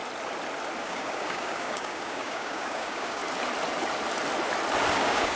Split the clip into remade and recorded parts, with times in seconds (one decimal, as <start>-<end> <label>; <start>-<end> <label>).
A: 0.0-0.8 recorded; 0.8-3.2 remade; 3.2-4.9 recorded; 4.9-5.4 remade